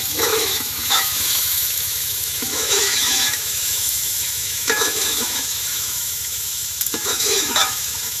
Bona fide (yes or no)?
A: no